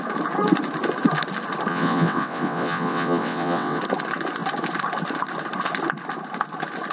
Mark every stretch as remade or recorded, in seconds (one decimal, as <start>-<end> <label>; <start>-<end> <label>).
0.0-1.7 recorded; 1.7-3.8 remade; 3.8-6.9 recorded